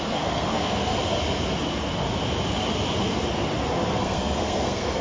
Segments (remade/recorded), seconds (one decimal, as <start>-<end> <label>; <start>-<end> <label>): 0.0-0.9 remade; 0.9-3.9 recorded; 3.9-5.0 remade